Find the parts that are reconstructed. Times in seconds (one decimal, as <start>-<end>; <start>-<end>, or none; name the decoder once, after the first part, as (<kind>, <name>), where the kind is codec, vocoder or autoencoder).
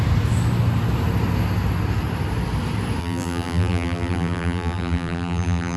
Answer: 3.0-5.8 (vocoder, BigVGAN v2)